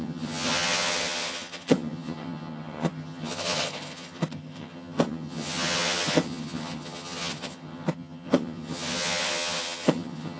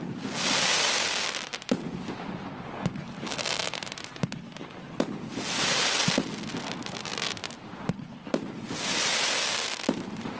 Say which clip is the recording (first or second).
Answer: second